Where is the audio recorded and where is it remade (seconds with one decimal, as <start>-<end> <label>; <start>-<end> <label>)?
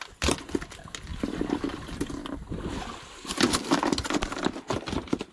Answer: 0.0-5.3 recorded